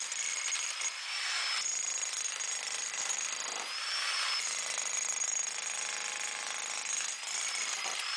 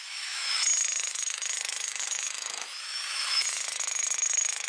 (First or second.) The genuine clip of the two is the first